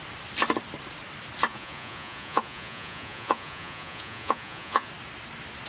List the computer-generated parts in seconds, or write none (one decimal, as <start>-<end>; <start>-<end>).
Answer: 1.5-4.9